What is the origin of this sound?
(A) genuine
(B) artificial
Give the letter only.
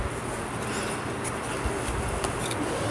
A